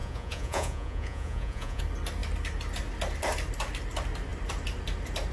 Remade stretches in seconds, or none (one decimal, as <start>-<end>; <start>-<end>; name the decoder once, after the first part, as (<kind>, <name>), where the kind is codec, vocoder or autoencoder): 0.0-1.8 (vocoder, Vocos)